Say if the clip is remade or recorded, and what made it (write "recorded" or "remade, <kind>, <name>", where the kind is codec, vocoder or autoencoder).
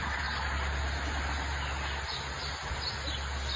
recorded